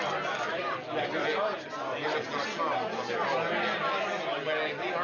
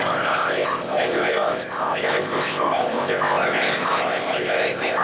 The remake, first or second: second